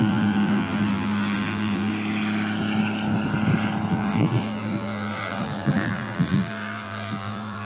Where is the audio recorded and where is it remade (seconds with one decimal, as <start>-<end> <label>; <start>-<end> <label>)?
0.0-1.9 remade; 1.9-3.9 recorded; 3.9-7.6 remade